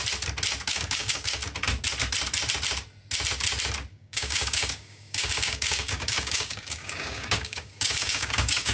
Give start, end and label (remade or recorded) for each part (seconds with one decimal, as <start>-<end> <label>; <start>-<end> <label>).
0.0-0.7 recorded; 0.7-1.4 remade; 1.4-3.9 recorded; 3.9-8.7 remade